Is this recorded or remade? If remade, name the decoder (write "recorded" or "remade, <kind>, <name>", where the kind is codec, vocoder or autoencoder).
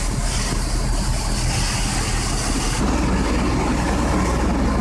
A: recorded